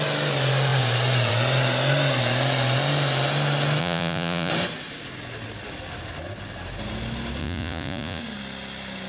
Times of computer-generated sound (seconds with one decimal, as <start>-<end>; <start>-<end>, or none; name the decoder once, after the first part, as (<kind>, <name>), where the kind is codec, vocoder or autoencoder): 3.8-4.5 (vocoder, Vocos); 7.4-8.2